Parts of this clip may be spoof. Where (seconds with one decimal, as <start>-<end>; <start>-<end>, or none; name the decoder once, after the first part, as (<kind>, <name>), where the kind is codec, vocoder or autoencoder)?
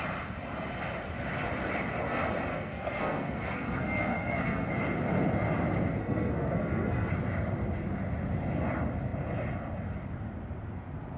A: 2.5-4.7 (codec, SNAC); 6.0-7.1